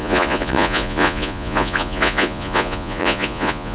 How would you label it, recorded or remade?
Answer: remade